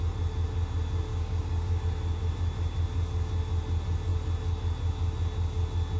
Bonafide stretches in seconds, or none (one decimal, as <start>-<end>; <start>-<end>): 0.0-1.1; 1.8-6.0